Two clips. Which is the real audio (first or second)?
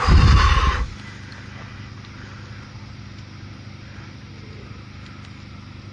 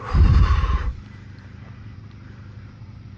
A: first